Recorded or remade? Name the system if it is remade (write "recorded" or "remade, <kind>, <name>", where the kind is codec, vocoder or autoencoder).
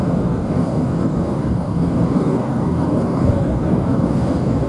remade, codec, DAC